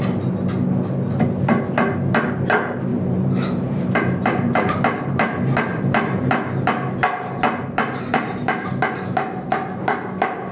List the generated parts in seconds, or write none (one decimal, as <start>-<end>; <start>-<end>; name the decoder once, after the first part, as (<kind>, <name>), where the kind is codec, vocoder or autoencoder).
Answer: 2.9-4.7 (vocoder, BigVGAN v2); 5.7-6.3; 8.1-8.7